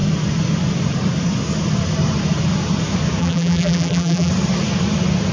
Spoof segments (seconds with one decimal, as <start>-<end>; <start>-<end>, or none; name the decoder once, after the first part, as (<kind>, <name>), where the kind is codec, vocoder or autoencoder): 3.2-4.3 (vocoder, BigVGAN v2)